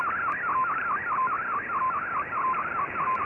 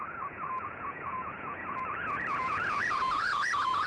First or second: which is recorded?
first